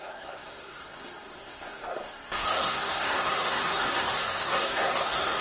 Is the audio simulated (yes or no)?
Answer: yes